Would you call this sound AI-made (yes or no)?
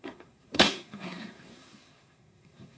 yes